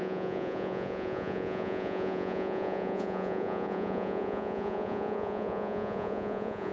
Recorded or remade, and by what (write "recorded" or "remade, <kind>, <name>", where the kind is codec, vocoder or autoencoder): remade, vocoder, Vocos